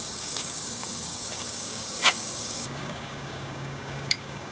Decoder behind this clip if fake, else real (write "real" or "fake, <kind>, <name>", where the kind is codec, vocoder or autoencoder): fake, codec, DAC